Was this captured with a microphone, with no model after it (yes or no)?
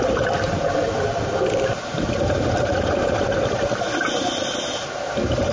yes